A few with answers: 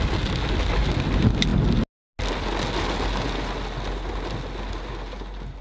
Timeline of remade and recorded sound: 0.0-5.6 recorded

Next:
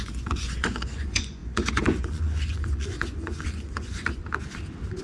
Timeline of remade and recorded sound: 0.0-4.2 remade; 4.2-5.0 recorded

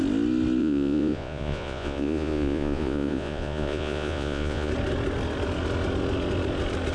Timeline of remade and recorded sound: 0.0-0.6 recorded; 0.6-4.7 remade; 4.7-6.9 recorded

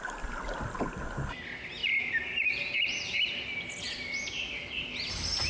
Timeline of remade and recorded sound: 0.0-5.5 recorded

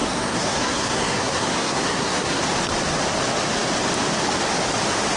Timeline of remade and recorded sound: 0.0-2.4 remade; 2.4-5.2 recorded

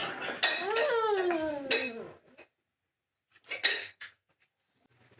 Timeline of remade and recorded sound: 0.0-3.7 recorded; 3.7-4.3 remade; 4.3-5.2 recorded

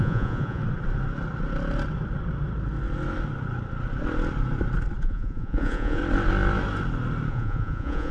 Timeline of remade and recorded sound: 0.0-0.6 remade; 0.6-5.0 recorded; 5.0-6.0 remade; 6.0-7.3 recorded; 7.3-8.1 remade